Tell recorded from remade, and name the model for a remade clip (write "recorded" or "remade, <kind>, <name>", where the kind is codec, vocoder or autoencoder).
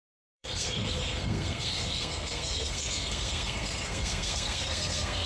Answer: remade, codec, SNAC